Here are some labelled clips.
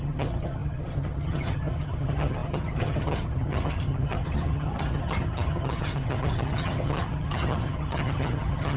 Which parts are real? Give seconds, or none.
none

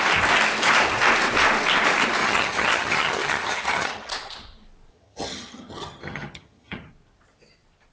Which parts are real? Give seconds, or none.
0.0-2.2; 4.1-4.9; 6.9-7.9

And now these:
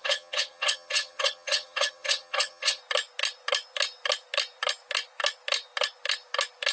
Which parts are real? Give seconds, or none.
2.8-6.7